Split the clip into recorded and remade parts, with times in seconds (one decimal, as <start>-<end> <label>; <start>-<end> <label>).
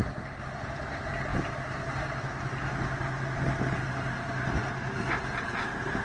0.0-6.0 recorded